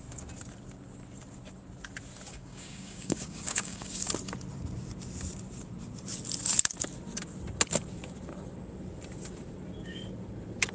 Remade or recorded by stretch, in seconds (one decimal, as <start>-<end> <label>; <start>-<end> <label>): 0.0-2.3 recorded; 2.3-4.1 remade; 4.1-10.7 recorded